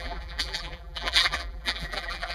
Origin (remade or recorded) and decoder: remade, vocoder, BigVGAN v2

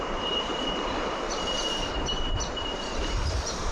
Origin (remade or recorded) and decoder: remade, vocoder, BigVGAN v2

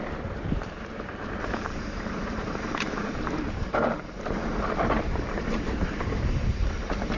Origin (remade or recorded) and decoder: remade, vocoder, BigVGAN v2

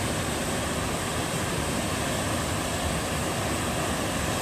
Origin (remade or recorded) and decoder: recorded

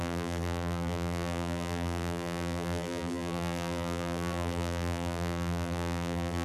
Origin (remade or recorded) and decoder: remade, vocoder, BigVGAN v2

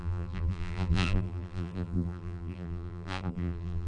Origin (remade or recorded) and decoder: remade, vocoder, BigVGAN v2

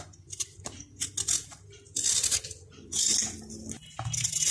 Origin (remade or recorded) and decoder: recorded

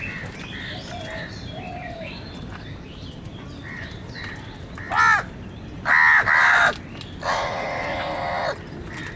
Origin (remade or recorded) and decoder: recorded